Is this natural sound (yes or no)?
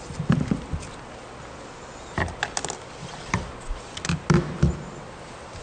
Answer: yes